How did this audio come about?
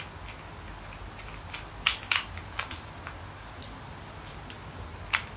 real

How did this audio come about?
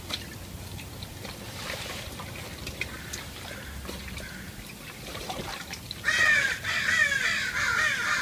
real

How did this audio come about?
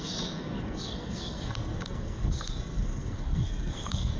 fake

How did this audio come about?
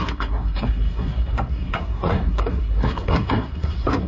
fake